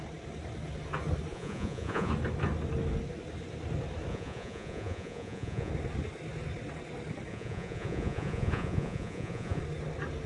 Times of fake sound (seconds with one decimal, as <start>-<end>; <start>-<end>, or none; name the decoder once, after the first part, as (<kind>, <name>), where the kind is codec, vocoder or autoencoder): 1.3-2.1 (vocoder, Vocos); 4.1-5.7; 7.3-9.6